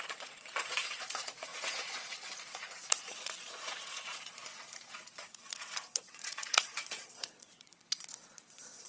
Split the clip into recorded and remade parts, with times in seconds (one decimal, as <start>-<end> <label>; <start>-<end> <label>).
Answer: 0.0-8.9 remade